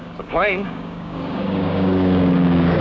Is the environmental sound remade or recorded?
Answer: remade